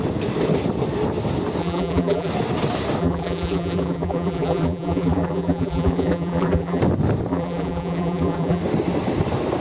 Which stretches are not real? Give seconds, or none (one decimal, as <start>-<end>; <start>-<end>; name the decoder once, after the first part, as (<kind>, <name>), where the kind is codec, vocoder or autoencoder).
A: 1.6-2.3 (vocoder, BigVGAN v2); 3.0-6.8; 7.3-8.6